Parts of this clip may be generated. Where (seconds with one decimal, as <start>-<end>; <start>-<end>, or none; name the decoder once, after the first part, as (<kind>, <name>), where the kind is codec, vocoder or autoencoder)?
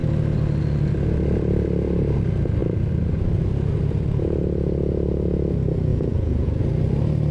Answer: 5.9-6.6 (vocoder, Vocos)